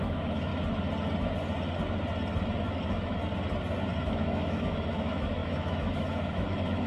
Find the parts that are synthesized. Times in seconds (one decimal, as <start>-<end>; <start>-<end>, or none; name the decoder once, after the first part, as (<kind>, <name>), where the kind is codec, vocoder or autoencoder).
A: 0.0-0.5 (autoencoder, DAC-VAE); 2.8-3.2; 4.0-6.9